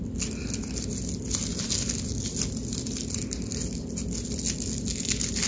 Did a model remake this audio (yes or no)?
no